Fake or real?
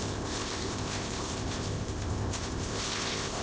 fake